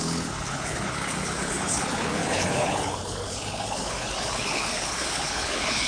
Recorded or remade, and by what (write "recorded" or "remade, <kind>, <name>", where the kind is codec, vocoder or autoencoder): remade, codec, HILCodec